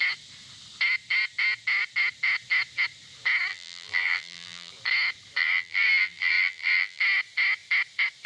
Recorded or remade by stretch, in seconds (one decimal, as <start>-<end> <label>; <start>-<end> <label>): 0.0-3.5 recorded; 3.5-4.7 remade; 4.7-5.4 recorded; 5.4-7.0 remade; 7.0-8.3 recorded